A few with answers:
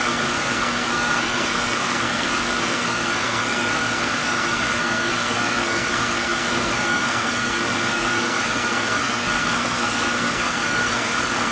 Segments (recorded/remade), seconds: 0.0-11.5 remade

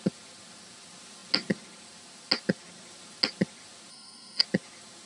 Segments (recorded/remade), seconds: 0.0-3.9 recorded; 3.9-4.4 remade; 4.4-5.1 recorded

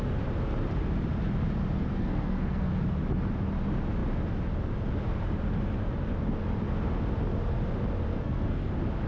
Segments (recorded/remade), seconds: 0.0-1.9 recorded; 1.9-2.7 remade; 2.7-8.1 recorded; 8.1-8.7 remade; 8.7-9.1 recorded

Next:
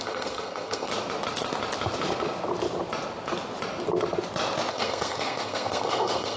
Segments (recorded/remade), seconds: 0.0-0.9 remade; 0.9-4.7 recorded; 4.7-6.4 remade

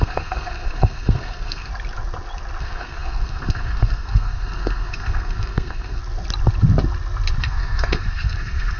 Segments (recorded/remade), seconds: 0.0-1.7 remade; 1.7-2.6 recorded; 2.6-6.0 remade; 6.0-7.4 recorded; 7.4-8.8 remade

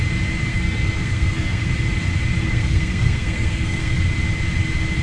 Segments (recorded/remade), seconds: 0.0-0.5 recorded; 0.5-1.7 remade; 1.7-2.4 recorded; 2.4-4.0 remade; 4.0-5.0 recorded

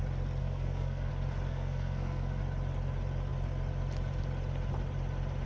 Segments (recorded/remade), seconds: 0.0-0.4 recorded; 0.4-1.1 remade; 1.1-1.5 recorded; 1.5-2.4 remade; 2.4-5.5 recorded

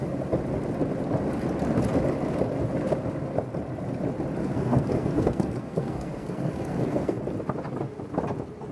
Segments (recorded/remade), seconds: 0.0-4.4 recorded; 4.4-7.2 remade; 7.2-8.7 recorded